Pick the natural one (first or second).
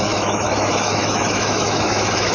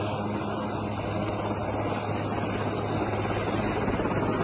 second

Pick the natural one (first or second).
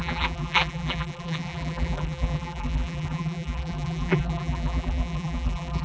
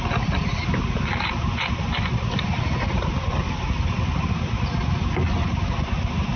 second